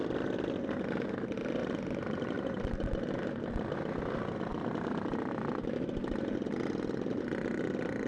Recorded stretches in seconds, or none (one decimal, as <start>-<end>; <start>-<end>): 0.0-1.6; 2.8-4.5; 5.3-8.1